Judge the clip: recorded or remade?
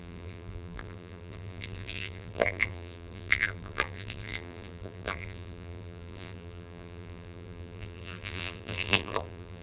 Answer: remade